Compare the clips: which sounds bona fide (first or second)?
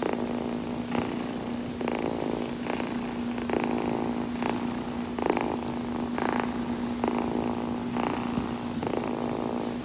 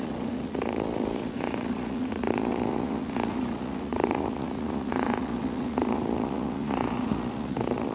first